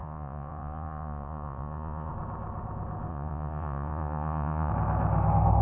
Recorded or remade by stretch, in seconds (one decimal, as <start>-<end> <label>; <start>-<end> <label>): 0.0-2.1 remade; 2.1-3.1 recorded; 3.1-4.7 remade; 4.7-5.6 recorded